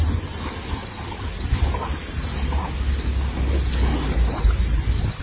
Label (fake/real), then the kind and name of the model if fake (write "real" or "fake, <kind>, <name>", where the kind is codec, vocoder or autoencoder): real